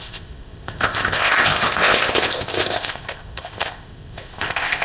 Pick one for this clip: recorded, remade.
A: remade